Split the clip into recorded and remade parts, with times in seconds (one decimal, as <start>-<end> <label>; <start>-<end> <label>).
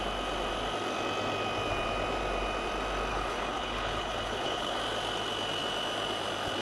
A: 0.0-3.1 recorded; 3.1-4.8 remade; 4.8-6.6 recorded